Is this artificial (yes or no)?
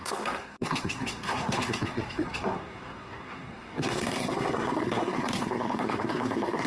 yes